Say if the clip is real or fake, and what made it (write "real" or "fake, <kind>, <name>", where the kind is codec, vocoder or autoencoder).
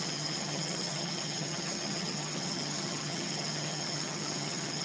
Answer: fake, vocoder, HiFi-GAN